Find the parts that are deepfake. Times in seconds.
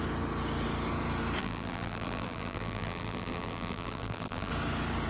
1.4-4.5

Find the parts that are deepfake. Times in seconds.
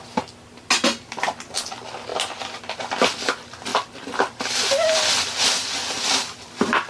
none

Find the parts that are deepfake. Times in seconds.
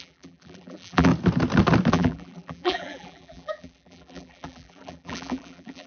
0.0-1.1; 1.9-5.9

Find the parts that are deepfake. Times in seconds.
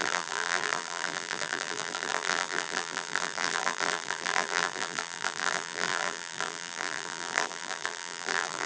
0.0-8.7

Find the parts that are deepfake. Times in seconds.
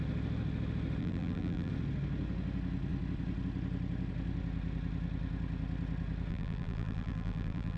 1.0-1.7; 6.3-7.8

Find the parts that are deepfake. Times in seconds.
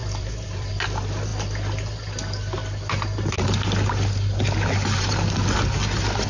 0.0-0.7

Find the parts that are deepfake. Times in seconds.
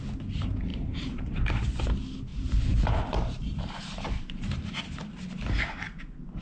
0.7-1.5; 2.3-4.6